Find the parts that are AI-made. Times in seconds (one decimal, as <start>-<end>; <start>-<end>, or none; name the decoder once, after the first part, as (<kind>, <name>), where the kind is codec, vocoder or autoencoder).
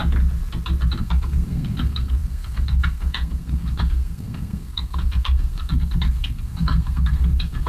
1.0-7.7 (codec, SNAC)